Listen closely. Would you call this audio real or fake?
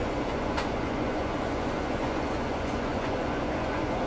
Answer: fake